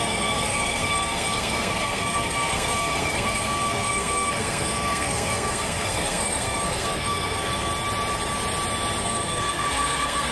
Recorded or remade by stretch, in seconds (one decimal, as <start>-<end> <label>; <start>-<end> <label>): 0.0-7.7 remade; 7.7-9.0 recorded; 9.0-10.3 remade